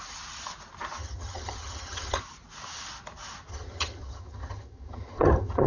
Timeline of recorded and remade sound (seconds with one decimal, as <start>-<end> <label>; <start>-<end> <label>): 0.0-1.0 recorded; 1.0-2.2 remade; 2.2-3.5 recorded; 3.5-5.7 remade